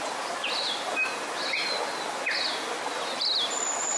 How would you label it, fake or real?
real